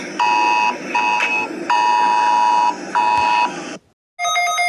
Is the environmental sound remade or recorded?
recorded